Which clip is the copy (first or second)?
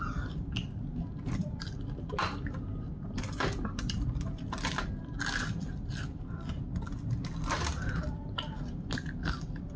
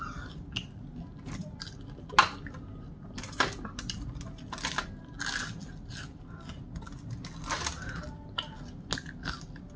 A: first